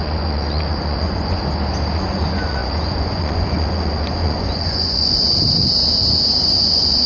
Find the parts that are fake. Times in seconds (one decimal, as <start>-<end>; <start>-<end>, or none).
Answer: 0.0-1.4; 1.9-5.2; 6.2-7.1